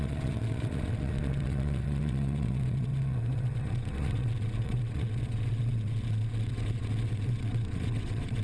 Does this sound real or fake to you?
fake